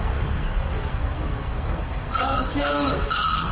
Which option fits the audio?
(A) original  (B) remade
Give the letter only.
B